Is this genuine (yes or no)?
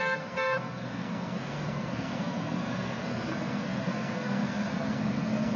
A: no